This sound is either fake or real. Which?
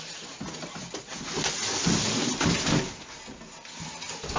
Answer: real